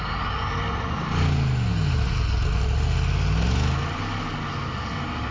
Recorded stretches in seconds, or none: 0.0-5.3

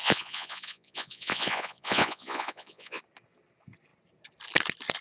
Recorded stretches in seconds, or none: 3.0-5.0

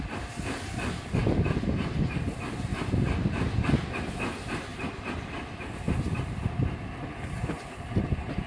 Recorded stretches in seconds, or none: 0.0-8.5